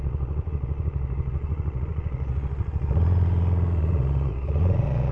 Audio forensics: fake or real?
fake